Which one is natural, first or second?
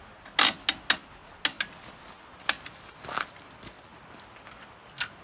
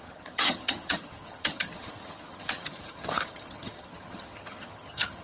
first